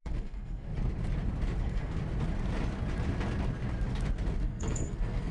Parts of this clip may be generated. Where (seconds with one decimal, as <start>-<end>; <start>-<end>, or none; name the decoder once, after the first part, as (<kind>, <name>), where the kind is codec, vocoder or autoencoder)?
0.0-0.7 (codec, SNAC); 1.6-2.0; 4.4-5.3